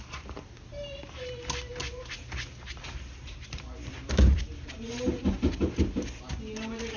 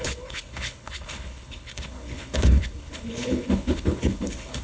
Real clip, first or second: first